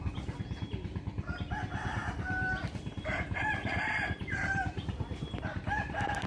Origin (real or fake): fake